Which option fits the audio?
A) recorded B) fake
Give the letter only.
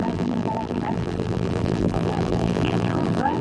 B